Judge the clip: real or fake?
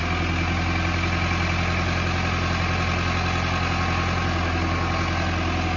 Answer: real